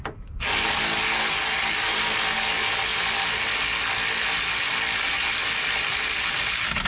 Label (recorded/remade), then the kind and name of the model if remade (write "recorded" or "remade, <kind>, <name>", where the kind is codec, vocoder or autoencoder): recorded